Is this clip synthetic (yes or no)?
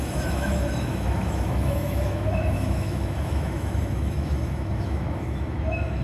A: yes